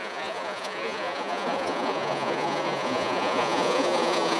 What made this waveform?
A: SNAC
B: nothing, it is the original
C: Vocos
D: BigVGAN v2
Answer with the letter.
C